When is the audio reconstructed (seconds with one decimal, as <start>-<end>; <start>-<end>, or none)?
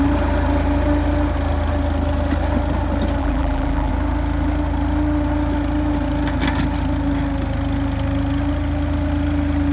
3.2-3.9